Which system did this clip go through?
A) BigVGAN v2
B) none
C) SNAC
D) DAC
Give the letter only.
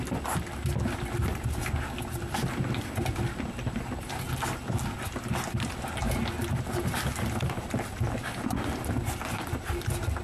B